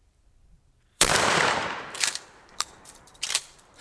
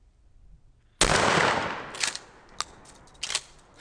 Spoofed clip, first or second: first